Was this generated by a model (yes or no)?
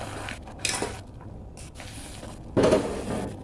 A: no